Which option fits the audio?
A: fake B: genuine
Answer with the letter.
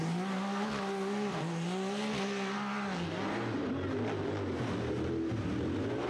B